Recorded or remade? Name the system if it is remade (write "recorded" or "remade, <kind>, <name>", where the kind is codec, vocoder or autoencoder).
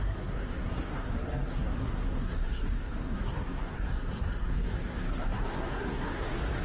remade, codec, SNAC